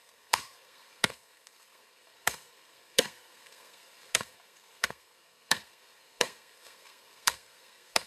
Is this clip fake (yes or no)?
yes